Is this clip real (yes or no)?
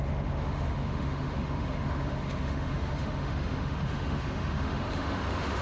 no